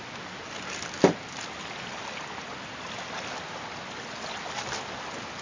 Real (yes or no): yes